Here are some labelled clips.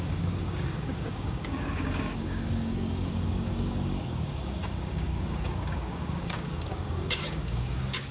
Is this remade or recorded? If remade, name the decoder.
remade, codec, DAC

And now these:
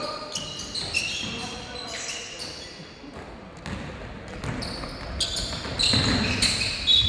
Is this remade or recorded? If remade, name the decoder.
recorded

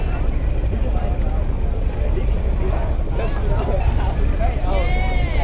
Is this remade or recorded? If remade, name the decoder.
remade, vocoder, BigVGAN v2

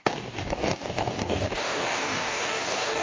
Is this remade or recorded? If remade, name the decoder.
remade, codec, DAC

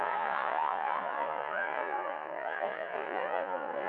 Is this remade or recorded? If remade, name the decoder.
remade, vocoder, Vocos